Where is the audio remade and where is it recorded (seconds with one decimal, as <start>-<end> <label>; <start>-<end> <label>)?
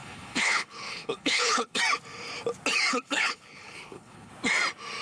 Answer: 0.0-1.8 remade; 1.8-2.9 recorded; 2.9-4.3 remade; 4.3-5.0 recorded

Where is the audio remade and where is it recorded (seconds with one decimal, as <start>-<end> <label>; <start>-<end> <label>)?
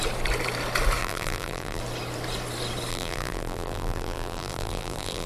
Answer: 0.0-1.0 recorded; 1.0-1.8 remade; 1.8-2.9 recorded; 2.9-5.3 remade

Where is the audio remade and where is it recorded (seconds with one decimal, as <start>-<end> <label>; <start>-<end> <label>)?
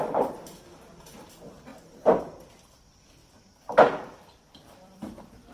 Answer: 0.0-1.7 remade; 1.7-2.2 recorded; 2.2-3.2 remade; 3.2-4.3 recorded; 4.3-5.5 remade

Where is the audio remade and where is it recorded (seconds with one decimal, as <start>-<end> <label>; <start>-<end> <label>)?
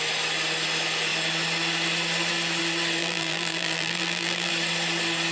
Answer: 0.0-3.0 recorded; 3.0-4.5 remade; 4.5-5.3 recorded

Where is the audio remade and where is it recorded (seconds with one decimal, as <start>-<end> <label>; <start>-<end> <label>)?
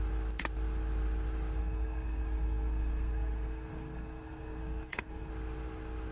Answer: 0.0-1.6 recorded; 1.6-5.3 remade; 5.3-6.1 recorded